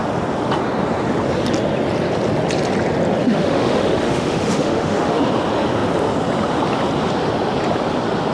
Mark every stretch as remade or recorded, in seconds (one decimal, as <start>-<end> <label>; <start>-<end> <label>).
0.0-3.2 recorded; 3.2-5.2 remade; 5.2-8.3 recorded